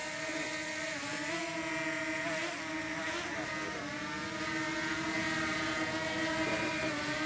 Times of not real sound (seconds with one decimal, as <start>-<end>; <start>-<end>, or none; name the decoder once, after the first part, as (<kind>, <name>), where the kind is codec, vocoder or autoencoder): none